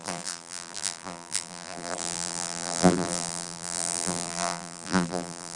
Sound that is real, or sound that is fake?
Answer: fake